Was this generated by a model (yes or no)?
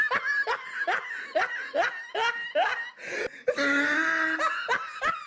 no